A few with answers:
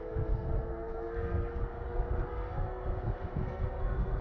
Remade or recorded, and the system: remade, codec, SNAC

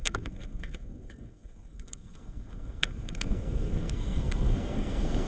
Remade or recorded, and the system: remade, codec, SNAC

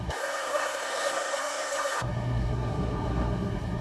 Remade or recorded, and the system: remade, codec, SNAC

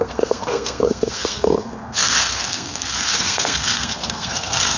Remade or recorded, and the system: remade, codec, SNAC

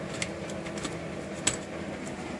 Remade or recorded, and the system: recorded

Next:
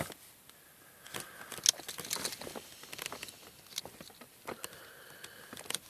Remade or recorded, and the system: recorded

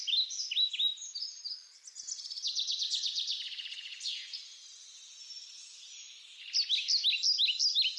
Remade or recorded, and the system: recorded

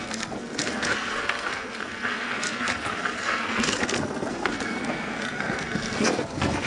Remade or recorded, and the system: remade, codec, SNAC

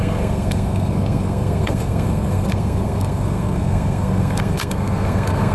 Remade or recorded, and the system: remade, codec, SNAC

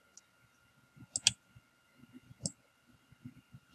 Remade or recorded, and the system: recorded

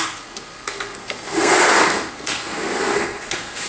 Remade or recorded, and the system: remade, codec, SNAC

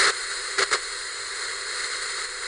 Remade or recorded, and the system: recorded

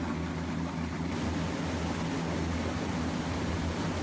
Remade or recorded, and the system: recorded